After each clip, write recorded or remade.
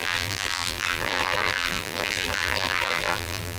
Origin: remade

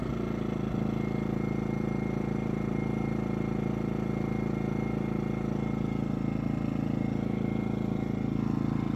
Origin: recorded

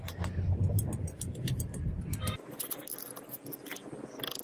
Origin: recorded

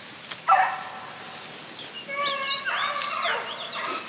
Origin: recorded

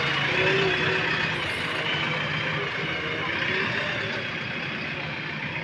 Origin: recorded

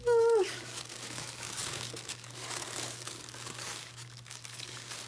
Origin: remade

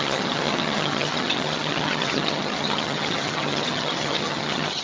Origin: remade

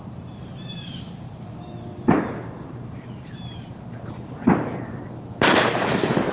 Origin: remade